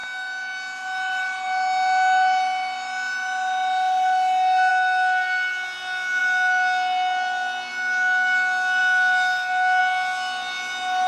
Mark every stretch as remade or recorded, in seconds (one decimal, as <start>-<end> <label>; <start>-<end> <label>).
0.0-11.1 recorded